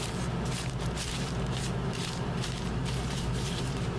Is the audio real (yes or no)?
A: no